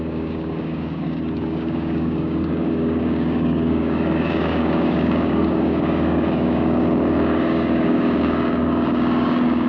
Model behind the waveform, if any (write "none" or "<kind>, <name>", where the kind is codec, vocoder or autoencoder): codec, DAC